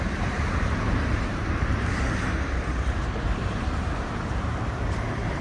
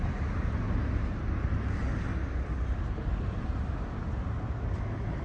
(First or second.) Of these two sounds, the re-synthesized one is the first